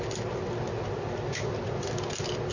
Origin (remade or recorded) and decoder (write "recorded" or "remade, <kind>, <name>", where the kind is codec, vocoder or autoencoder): recorded